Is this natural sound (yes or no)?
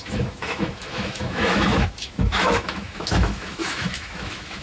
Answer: no